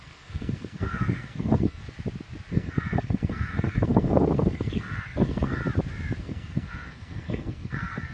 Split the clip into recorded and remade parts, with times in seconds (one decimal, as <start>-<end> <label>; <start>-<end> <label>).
0.0-1.8 remade; 1.8-2.5 recorded; 2.5-5.6 remade; 5.6-6.2 recorded; 6.2-8.1 remade